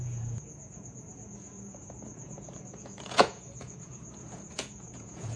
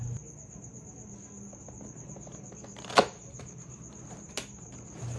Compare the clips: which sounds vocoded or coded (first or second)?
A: first